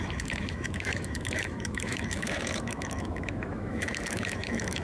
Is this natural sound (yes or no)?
no